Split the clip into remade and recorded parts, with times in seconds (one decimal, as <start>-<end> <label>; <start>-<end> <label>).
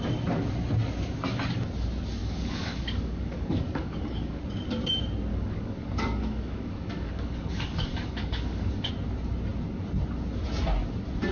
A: 0.0-2.2 recorded; 2.2-4.4 remade; 4.4-5.3 recorded; 5.3-8.9 remade; 8.9-11.3 recorded